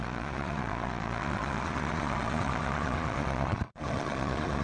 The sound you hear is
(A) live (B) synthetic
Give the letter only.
B